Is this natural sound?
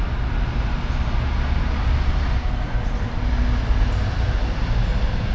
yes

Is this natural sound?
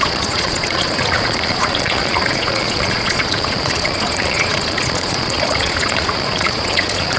no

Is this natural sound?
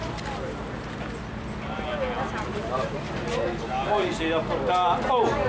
yes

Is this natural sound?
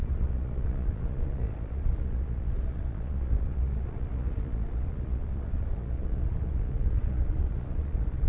no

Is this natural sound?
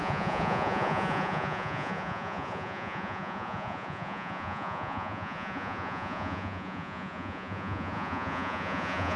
no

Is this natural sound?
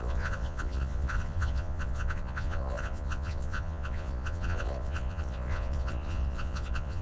no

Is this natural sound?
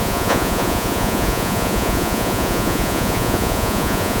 no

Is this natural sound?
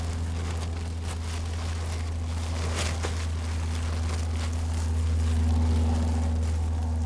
yes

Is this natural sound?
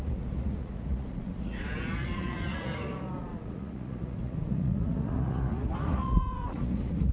no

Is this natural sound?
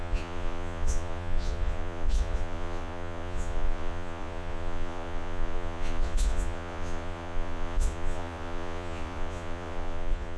no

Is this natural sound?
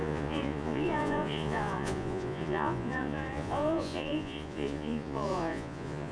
no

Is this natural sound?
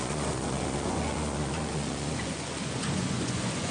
no